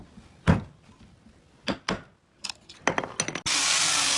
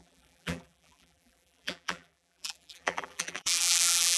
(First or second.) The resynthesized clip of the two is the second